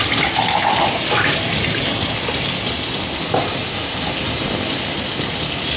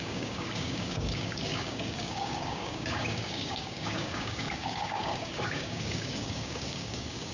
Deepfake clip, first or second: second